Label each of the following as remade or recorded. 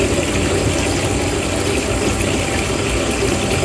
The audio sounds recorded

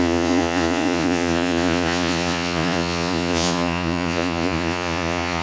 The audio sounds remade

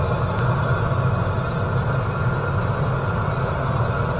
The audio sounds recorded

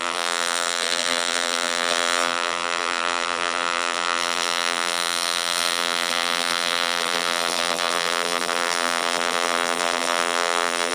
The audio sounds remade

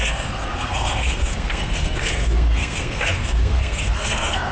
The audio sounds remade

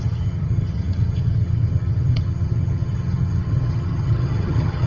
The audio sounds remade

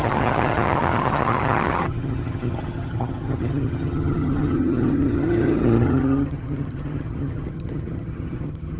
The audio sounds remade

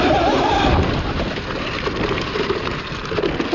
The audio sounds recorded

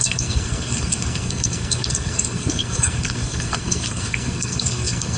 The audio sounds remade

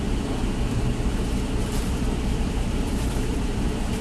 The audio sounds remade